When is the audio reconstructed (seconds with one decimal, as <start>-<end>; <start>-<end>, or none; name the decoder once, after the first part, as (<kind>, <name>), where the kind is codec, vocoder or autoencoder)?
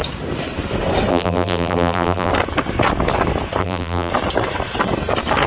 1.1-2.3 (vocoder, BigVGAN v2); 3.6-4.1